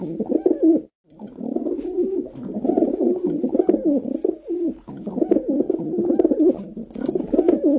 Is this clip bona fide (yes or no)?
yes